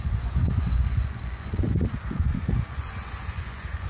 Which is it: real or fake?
fake